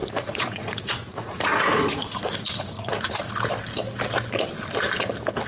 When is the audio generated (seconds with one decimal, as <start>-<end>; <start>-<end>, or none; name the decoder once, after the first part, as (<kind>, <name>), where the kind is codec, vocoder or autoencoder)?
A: 0.0-3.3 (vocoder, Vocos)